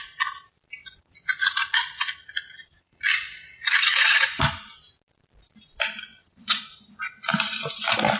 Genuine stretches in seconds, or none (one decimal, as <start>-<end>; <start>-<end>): 0.0-0.8; 4.4-6.1; 6.6-8.2